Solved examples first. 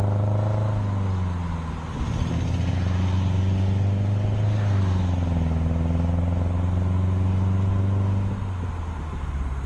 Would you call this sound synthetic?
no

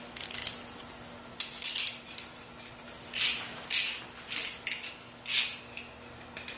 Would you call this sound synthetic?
no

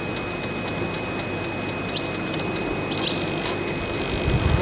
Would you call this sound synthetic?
no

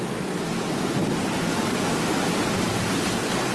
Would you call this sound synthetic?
no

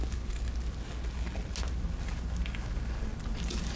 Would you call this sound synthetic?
no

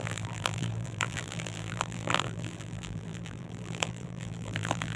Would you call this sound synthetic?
yes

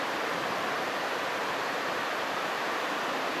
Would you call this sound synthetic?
yes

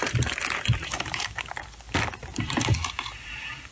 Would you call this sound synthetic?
yes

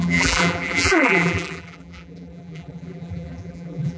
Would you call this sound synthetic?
yes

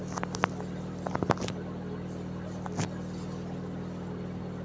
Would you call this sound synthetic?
no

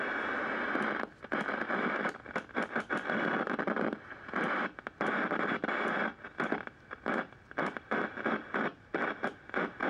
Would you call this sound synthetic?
no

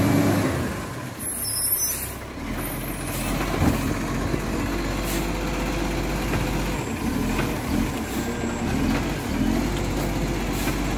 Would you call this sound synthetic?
no